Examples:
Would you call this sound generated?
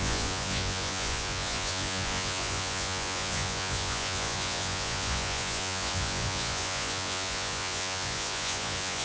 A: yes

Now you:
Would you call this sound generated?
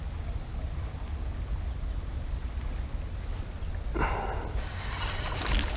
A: no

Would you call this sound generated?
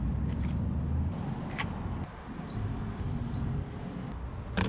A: no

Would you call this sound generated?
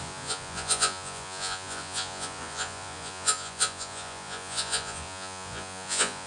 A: yes